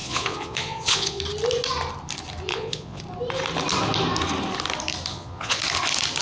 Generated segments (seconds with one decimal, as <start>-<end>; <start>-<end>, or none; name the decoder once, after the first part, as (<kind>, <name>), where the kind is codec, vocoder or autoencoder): 0.0-1.2 (vocoder, Vocos); 2.5-3.0; 5.1-5.6